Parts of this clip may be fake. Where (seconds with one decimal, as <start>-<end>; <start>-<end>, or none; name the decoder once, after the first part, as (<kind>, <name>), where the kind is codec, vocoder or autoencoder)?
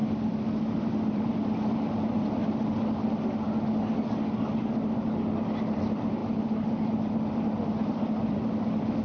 0.8-2.4 (vocoder, BigVGAN v2); 5.6-9.0